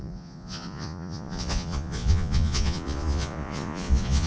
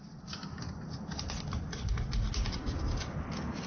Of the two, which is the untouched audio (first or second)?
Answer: second